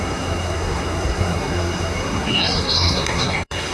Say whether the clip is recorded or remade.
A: remade